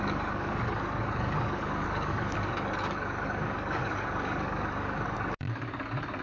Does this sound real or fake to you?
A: fake